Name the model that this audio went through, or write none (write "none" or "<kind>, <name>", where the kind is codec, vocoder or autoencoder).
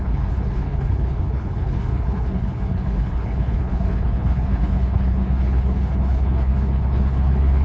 codec, HILCodec